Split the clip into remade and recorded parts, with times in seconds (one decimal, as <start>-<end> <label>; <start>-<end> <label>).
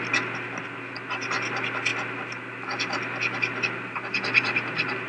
0.0-5.1 recorded